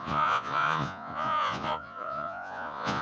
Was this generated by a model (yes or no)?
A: yes